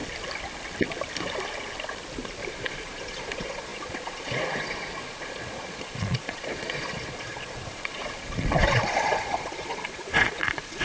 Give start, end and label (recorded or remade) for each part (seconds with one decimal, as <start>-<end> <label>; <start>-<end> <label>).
0.0-2.5 recorded; 2.5-10.8 remade